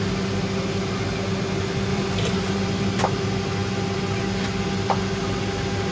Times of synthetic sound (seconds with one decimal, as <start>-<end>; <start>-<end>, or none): 1.9-3.0

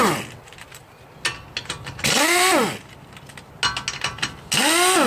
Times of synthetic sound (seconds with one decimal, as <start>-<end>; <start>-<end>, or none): none

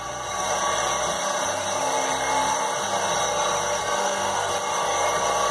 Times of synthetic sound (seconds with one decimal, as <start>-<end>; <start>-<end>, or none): 3.8-4.5

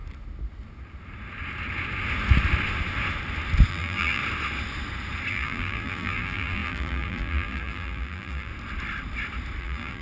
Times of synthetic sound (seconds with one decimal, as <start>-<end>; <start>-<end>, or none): 3.7-4.2; 5.3-8.5; 9.6-10.0

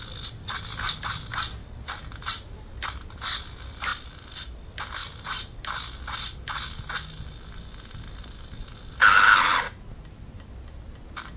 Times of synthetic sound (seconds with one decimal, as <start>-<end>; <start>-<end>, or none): none

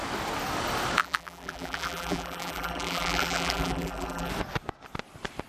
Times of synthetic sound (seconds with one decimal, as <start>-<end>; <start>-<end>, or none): 1.0-4.3